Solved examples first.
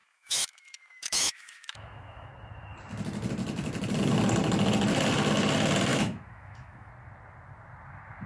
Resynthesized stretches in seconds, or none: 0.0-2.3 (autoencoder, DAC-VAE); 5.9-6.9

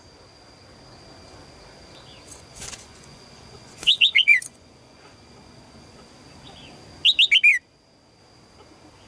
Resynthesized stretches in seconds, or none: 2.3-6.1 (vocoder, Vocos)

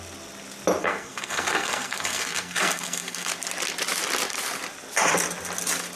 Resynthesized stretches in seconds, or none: 0.8-3.3 (codec, SNAC)

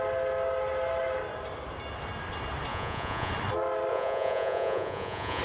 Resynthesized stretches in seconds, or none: 2.7-3.3 (vocoder, Vocos); 3.9-5.4